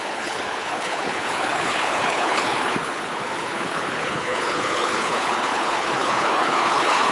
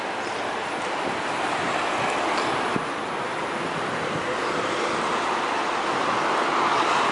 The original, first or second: second